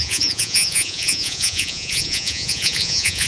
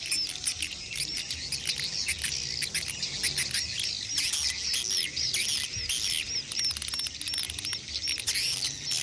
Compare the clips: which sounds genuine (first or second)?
second